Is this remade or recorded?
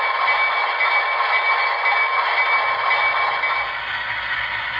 recorded